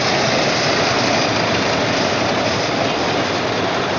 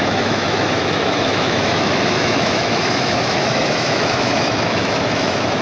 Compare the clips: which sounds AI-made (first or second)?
second